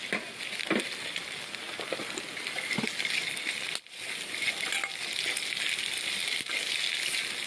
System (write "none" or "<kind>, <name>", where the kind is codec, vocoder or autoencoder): none